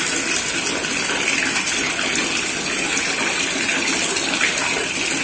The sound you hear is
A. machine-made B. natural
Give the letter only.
B